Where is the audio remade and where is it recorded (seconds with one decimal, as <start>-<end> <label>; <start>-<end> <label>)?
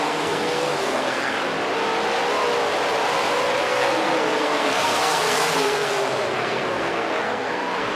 0.0-1.5 remade; 1.5-3.6 recorded; 3.6-8.0 remade